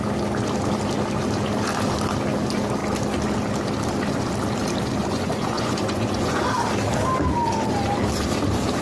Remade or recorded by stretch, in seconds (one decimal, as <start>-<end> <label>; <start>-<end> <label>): 0.0-5.0 recorded; 5.0-6.4 remade; 6.4-8.8 recorded